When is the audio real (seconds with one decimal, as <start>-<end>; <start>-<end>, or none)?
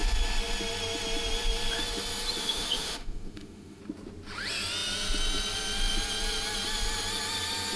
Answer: 0.0-2.4; 3.8-7.8